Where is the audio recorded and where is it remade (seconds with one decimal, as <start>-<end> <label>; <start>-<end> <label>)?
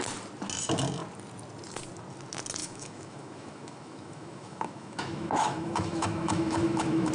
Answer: 0.0-2.6 recorded; 2.6-7.1 remade